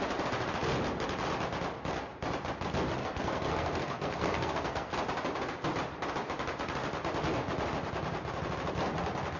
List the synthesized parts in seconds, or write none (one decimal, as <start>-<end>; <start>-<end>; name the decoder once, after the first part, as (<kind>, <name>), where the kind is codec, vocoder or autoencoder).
3.0-4.9 (codec, SNAC)